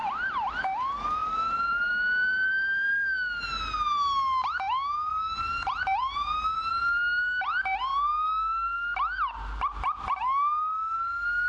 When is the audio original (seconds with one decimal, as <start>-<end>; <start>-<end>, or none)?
0.5-1.2; 1.9-5.1; 6.7-11.5